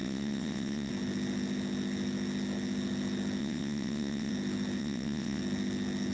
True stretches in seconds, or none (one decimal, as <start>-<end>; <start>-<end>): 0.9-3.4; 4.3-4.8; 5.4-6.1